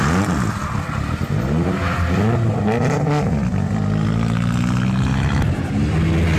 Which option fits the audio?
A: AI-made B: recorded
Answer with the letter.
B